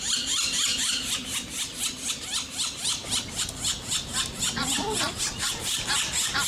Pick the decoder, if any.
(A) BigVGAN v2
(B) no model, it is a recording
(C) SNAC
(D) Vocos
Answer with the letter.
B